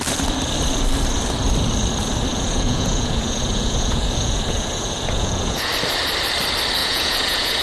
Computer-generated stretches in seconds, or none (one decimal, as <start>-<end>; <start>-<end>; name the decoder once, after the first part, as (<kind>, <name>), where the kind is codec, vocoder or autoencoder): 2.3-5.7 (vocoder, Vocos); 6.8-7.6

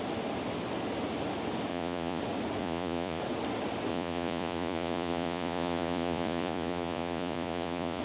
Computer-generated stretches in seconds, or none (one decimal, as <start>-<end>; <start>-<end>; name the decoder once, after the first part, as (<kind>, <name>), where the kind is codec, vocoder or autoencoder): 1.7-2.2 (vocoder, Vocos); 2.6-3.2; 3.9-8.0

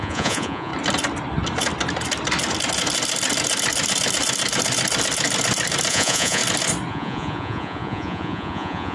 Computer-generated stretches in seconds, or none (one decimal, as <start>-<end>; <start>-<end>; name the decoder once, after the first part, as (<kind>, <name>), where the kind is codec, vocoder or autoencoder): 0.0-0.7 (vocoder, Vocos); 5.9-6.4; 6.9-8.9

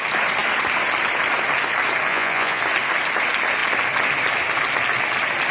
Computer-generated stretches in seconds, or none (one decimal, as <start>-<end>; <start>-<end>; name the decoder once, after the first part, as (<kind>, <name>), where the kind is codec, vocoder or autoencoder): 2.1-2.6 (vocoder, Vocos)

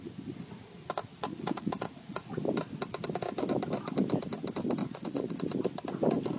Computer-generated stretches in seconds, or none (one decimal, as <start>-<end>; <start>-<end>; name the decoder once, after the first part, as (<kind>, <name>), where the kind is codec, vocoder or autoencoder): 1.1-2.4 (vocoder, Vocos); 4.8-5.3

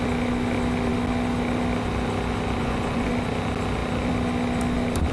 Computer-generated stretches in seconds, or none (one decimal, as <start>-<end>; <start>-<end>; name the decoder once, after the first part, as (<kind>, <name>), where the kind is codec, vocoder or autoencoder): 2.6-3.1 (vocoder, Vocos)

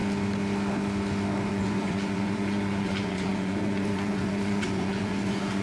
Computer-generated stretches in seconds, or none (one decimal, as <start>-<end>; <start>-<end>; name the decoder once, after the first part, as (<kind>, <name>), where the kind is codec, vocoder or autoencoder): 1.5-5.6 (vocoder, Vocos)